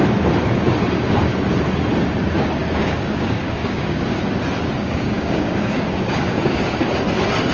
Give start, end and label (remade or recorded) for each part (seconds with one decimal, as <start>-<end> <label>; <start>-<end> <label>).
0.0-2.6 recorded; 2.6-4.2 remade; 4.2-4.8 recorded; 4.8-6.6 remade; 6.6-7.5 recorded